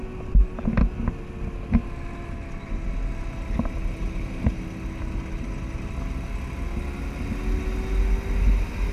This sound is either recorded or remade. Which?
recorded